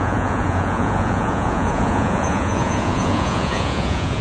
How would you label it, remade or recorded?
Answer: remade